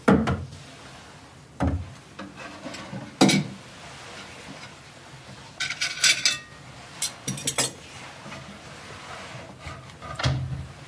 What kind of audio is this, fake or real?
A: real